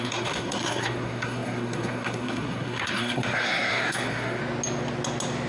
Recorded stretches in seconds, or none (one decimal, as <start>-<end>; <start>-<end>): 4.4-5.5

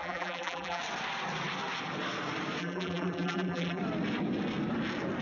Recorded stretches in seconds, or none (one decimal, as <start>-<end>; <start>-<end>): 0.8-2.6; 3.8-5.2

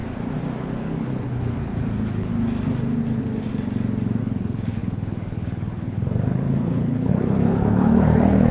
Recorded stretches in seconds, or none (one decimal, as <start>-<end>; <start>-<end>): 0.0-0.6; 2.3-4.2

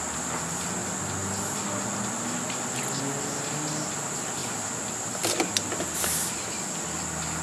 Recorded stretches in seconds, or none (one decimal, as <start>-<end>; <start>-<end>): 0.0-7.4

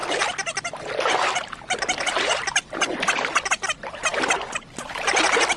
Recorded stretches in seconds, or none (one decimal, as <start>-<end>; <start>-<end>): 0.0-5.6

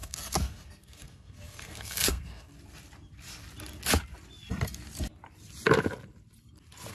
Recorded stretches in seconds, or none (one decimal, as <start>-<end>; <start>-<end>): 2.5-6.9

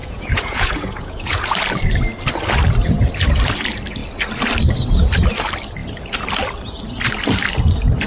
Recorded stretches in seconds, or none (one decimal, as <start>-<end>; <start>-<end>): 1.4-8.1

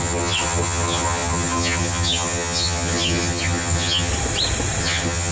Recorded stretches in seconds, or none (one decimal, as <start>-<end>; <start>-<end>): 4.1-4.8